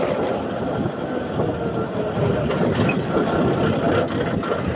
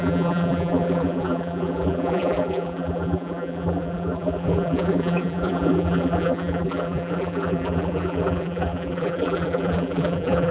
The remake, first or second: second